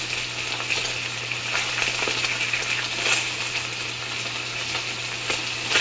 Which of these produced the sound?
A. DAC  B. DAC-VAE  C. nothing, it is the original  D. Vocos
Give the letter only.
C